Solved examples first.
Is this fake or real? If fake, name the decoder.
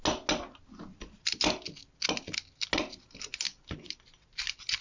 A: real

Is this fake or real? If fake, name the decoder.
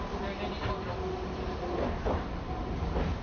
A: real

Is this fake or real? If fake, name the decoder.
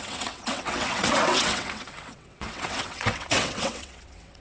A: fake, vocoder, WaveNeXt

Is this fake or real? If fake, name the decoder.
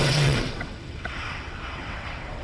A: fake, vocoder, WaveNeXt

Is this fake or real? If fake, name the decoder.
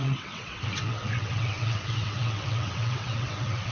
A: fake, vocoder, WaveNeXt